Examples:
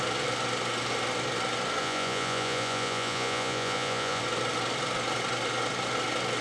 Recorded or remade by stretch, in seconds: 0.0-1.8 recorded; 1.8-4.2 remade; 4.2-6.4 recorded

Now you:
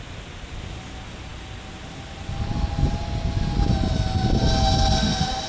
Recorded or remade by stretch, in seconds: 0.0-5.5 recorded

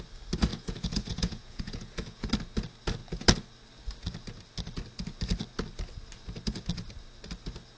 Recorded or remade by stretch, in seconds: 0.0-0.5 recorded; 0.5-2.3 remade; 2.3-7.8 recorded

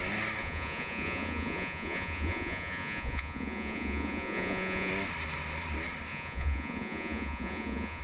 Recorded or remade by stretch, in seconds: 0.0-0.4 recorded; 0.4-4.9 remade; 4.9-6.1 recorded; 6.1-8.0 remade

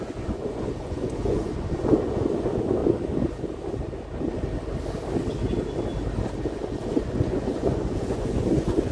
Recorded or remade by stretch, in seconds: 0.0-2.8 remade; 2.8-6.8 recorded; 6.8-8.9 remade